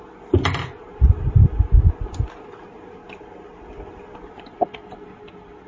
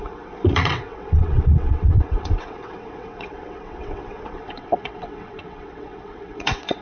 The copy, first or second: second